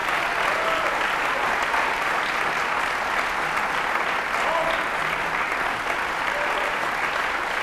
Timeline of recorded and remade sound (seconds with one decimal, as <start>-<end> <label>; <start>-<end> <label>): 0.0-7.6 recorded